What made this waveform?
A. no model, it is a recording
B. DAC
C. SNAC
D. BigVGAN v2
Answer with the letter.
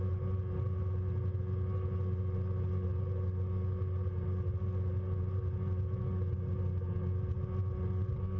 A